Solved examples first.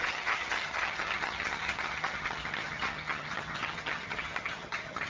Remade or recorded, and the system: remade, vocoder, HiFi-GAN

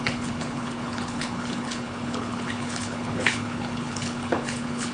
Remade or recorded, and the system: remade, codec, HILCodec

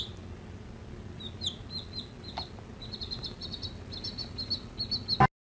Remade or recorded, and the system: recorded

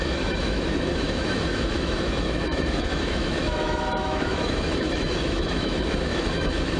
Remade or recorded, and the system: remade, autoencoder, DAC-VAE